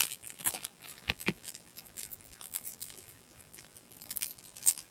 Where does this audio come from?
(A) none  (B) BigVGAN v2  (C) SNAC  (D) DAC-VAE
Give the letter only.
B